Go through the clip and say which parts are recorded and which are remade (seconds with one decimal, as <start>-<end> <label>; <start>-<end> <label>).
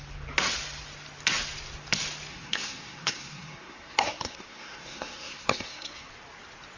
0.0-2.3 recorded; 2.3-6.1 remade; 6.1-6.8 recorded